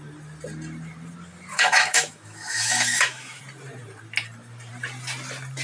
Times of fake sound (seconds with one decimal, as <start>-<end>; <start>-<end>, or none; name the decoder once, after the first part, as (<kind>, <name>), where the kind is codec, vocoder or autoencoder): 1.5-3.4 (autoencoder, DAC-VAE)